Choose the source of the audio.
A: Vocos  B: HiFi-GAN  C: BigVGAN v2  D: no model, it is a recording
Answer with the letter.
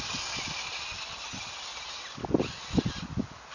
D